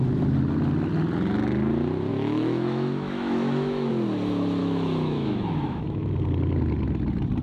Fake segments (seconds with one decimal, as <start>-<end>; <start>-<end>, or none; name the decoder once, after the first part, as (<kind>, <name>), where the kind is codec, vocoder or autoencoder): 2.1-3.9 (autoencoder, DAC-VAE); 4.6-6.1